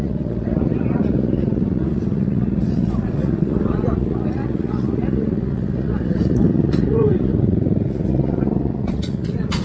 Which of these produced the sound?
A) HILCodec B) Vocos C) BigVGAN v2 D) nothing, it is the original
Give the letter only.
B